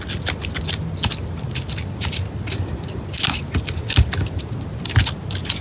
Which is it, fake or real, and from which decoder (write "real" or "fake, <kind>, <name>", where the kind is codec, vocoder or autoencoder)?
real